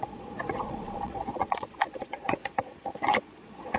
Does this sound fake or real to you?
fake